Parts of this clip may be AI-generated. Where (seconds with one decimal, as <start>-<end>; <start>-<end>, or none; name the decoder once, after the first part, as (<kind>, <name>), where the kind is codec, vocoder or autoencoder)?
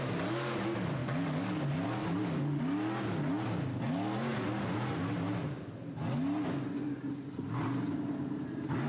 1.0-1.6 (codec, DAC); 2.0-2.6